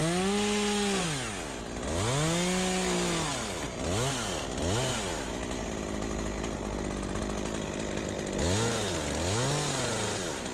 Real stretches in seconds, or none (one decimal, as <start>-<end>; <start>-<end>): 0.0-10.5